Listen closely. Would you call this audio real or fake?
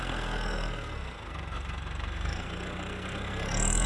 fake